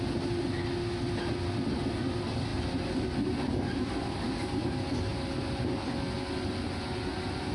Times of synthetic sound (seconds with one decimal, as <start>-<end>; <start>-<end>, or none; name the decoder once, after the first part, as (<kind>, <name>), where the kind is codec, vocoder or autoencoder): none